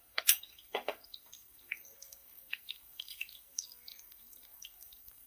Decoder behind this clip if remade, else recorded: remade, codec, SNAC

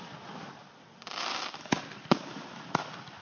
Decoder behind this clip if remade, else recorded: recorded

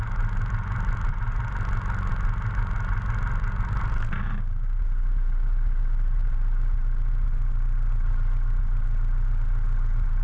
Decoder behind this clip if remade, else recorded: recorded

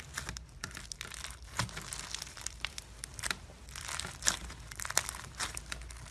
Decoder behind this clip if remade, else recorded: recorded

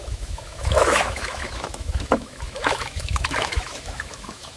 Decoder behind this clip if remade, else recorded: remade, autoencoder, DAC-VAE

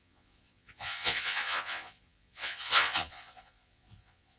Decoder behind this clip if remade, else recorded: remade, vocoder, Vocos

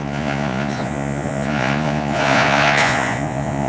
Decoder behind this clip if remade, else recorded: remade, vocoder, Vocos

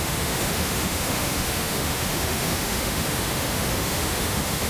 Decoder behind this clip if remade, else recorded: remade, autoencoder, DAC-VAE